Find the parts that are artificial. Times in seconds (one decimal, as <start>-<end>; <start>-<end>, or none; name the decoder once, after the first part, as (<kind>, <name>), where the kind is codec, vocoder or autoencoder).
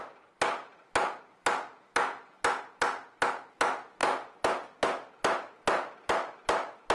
none